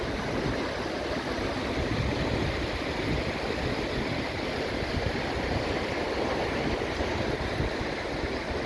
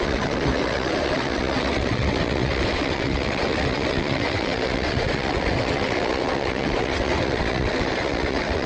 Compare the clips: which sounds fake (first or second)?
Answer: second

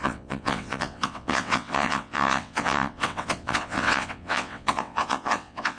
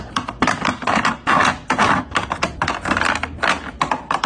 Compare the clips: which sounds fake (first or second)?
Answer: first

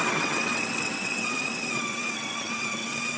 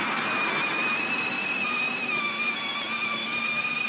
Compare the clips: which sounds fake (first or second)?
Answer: first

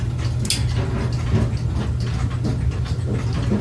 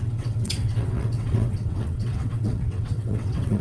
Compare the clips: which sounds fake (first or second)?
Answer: second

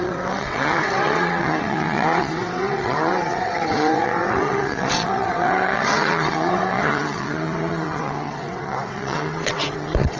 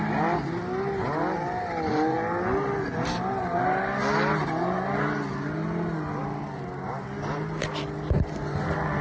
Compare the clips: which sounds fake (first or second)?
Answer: first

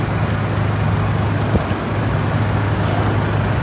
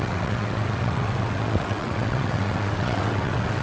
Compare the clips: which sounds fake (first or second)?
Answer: second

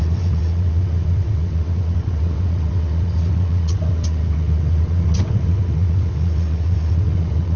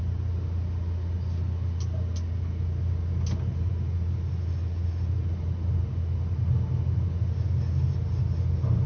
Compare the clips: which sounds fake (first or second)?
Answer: first